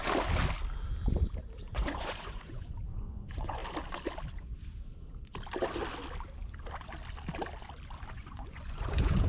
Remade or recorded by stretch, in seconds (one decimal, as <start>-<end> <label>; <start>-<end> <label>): 0.0-1.7 recorded; 1.7-3.6 remade; 3.6-8.1 recorded; 8.1-9.3 remade